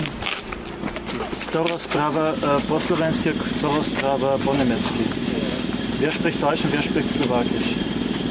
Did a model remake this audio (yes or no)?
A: no